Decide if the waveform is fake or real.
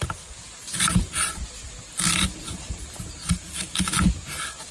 real